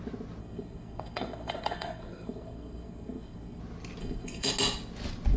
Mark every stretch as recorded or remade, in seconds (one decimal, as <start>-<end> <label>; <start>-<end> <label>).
0.0-0.4 recorded; 0.4-3.6 remade; 3.6-4.0 recorded; 4.0-4.5 remade; 4.5-5.4 recorded